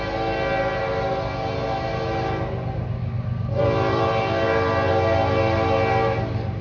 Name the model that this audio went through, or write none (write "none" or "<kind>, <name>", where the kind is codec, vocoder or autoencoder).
none